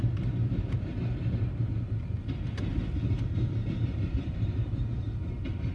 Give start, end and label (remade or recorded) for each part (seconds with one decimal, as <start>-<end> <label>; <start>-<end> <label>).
0.0-0.9 remade; 0.9-1.6 recorded; 1.6-5.7 remade